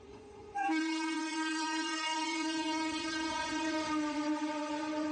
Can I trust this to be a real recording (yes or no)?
no